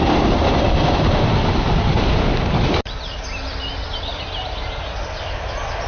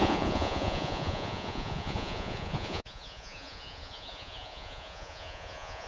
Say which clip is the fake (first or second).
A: second